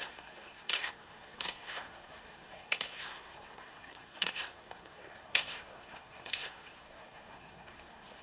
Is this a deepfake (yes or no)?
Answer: yes